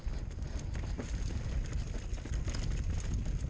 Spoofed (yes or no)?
no